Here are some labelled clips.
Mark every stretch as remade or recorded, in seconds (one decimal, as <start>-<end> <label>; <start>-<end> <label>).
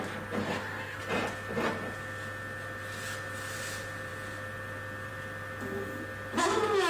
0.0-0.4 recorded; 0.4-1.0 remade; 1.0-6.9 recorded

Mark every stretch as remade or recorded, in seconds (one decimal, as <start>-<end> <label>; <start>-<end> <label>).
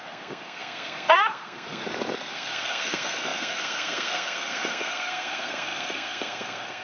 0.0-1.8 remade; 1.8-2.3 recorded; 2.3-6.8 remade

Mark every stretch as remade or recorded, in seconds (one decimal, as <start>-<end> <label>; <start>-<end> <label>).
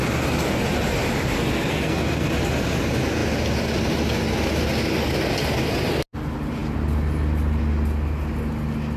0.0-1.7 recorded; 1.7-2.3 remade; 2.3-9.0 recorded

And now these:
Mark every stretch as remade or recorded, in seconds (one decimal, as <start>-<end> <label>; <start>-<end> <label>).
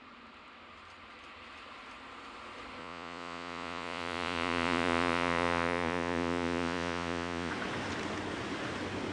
0.0-2.8 recorded; 2.8-7.5 remade; 7.5-9.1 recorded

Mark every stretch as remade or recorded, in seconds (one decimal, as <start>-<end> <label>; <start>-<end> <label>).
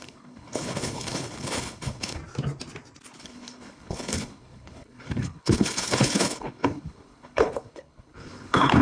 0.0-2.2 remade; 2.2-3.2 recorded; 3.2-8.8 remade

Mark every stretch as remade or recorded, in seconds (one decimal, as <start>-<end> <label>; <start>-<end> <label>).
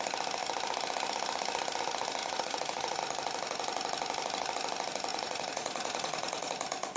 0.0-2.2 recorded; 2.2-3.0 remade; 3.0-5.1 recorded; 5.1-6.5 remade; 6.5-7.0 recorded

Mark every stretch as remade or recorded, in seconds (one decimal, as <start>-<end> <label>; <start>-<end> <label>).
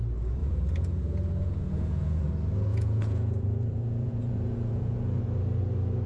0.0-0.4 recorded; 0.4-2.3 remade; 2.3-2.7 recorded; 2.7-5.2 remade; 5.2-6.1 recorded